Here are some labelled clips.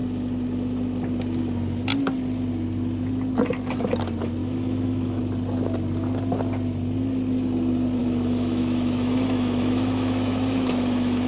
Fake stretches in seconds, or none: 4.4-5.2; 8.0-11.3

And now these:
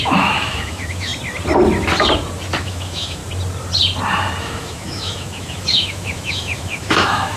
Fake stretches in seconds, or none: 0.0-1.1; 2.6-3.2; 4.4-7.4